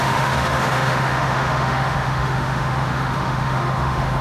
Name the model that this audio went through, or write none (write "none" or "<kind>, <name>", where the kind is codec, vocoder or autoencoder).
autoencoder, DAC-VAE